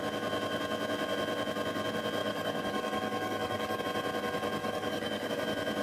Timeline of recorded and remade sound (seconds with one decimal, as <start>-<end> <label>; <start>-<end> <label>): 0.0-2.2 recorded; 2.2-3.8 remade; 3.8-4.6 recorded; 4.6-5.3 remade; 5.3-5.8 recorded